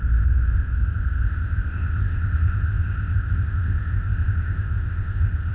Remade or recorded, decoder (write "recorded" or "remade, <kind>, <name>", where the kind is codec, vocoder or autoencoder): remade, codec, ZipCodec